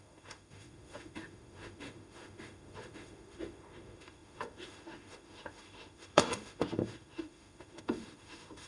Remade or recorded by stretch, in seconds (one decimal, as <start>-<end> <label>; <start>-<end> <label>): 0.0-8.7 remade